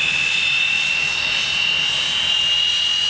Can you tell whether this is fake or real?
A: real